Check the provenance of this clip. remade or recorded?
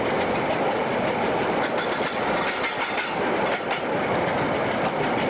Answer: recorded